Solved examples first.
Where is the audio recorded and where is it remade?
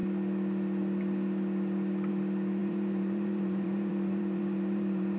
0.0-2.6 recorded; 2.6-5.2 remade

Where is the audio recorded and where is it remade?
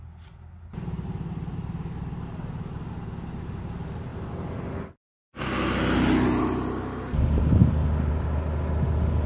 0.0-9.3 recorded